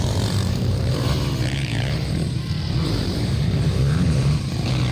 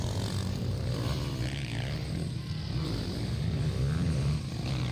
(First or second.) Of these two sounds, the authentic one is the second